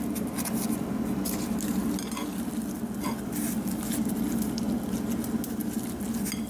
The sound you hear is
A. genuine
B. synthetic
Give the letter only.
A